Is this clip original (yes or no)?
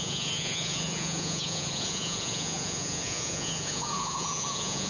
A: no